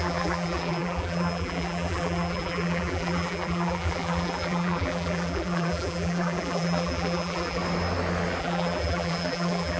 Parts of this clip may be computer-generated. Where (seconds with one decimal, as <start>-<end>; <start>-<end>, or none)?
0.0-7.6; 8.4-9.8